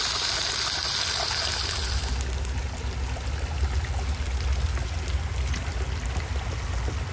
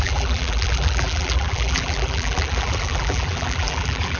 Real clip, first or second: first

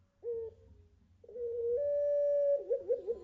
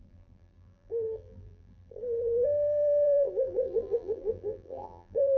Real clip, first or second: first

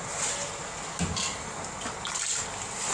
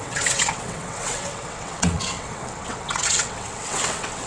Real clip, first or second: first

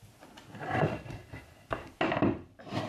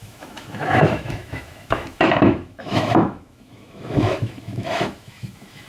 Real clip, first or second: first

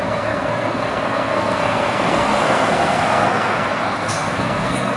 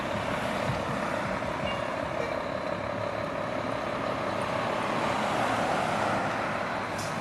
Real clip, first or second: second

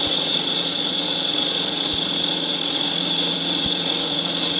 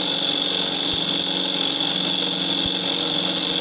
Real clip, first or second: second